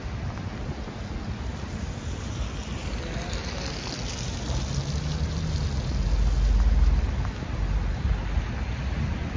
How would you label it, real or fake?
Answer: real